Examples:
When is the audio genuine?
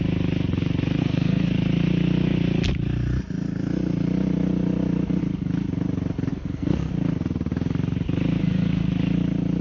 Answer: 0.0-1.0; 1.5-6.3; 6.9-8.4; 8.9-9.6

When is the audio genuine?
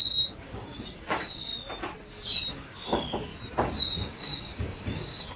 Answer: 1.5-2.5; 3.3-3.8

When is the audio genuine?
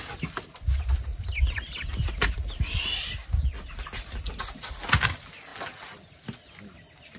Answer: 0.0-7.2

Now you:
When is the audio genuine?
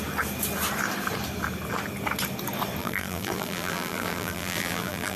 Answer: 0.0-2.8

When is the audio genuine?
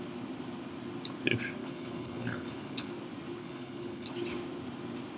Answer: 0.0-1.6; 2.9-3.4; 4.1-5.2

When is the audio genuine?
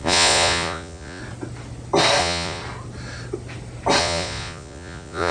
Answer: 1.2-2.2; 2.6-4.0